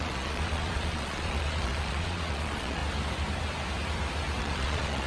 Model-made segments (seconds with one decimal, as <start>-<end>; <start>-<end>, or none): 0.0-2.8; 4.4-5.1